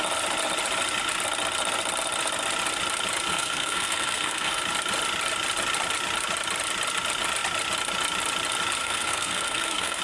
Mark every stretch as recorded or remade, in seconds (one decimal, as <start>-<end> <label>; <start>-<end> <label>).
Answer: 0.0-3.3 recorded; 3.3-4.6 remade; 4.6-8.8 recorded; 8.8-10.0 remade

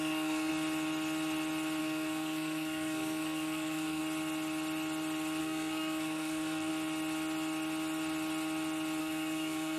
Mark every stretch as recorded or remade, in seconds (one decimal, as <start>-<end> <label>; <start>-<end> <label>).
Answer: 0.0-0.5 remade; 0.5-1.8 recorded; 1.8-4.0 remade; 4.0-5.4 recorded; 5.4-6.7 remade; 6.7-9.0 recorded; 9.0-9.8 remade

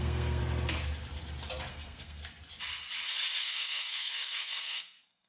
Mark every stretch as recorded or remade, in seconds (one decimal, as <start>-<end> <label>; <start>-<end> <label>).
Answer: 0.0-0.4 remade; 0.4-1.7 recorded; 1.7-2.2 remade; 2.2-3.4 recorded; 3.4-5.3 remade

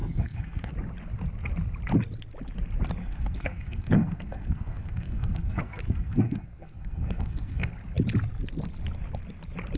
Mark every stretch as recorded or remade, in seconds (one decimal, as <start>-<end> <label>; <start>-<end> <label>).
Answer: 0.0-0.7 remade; 0.7-3.0 recorded; 3.0-7.7 remade; 7.7-9.8 recorded

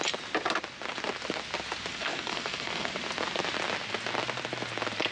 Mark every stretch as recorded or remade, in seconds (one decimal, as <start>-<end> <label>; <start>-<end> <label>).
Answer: 0.0-1.9 recorded; 1.9-2.9 remade; 2.9-5.1 recorded

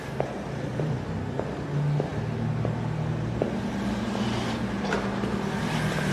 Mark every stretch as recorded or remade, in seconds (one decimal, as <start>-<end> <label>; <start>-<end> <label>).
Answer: 0.0-6.1 recorded

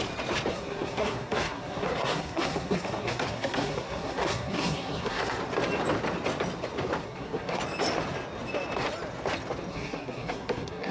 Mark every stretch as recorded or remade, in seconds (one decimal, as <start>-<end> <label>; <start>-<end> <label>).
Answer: 0.0-0.5 recorded; 0.5-5.4 remade; 5.4-7.0 recorded; 7.0-7.6 remade; 7.6-9.7 recorded; 9.7-10.9 remade

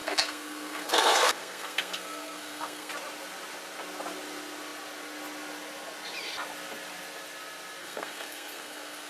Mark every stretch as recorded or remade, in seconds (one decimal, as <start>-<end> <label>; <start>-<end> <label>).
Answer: 0.0-2.9 remade; 2.9-7.8 recorded; 7.8-9.1 remade